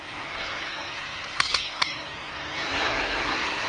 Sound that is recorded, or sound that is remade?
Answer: remade